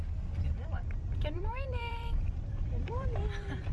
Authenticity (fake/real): fake